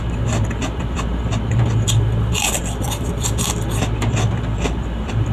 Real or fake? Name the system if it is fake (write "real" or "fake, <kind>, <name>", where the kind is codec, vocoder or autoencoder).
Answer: real